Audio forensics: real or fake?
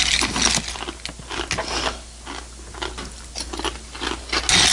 real